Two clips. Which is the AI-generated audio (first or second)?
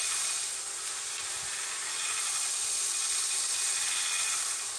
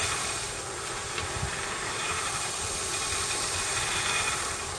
second